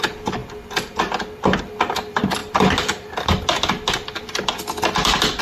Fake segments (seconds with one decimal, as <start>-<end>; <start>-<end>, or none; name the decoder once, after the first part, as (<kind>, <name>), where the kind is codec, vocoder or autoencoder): none